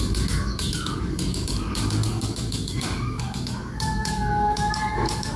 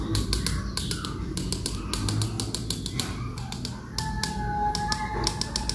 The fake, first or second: first